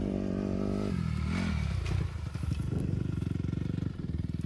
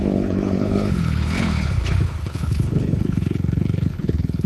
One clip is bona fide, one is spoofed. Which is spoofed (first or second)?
second